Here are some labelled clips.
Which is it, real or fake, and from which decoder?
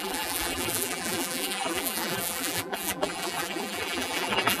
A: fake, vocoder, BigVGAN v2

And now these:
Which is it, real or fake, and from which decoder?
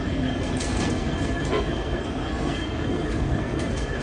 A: fake, codec, SNAC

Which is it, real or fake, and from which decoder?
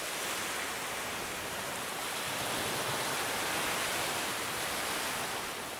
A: real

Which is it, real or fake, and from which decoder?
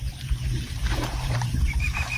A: fake, vocoder, BigVGAN v2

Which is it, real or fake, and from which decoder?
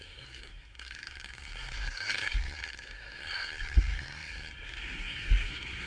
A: fake, codec, SNAC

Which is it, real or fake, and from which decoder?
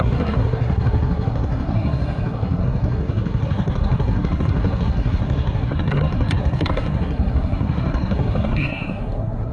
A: fake, codec, SNAC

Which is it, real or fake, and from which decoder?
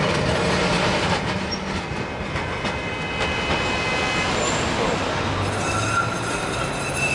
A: real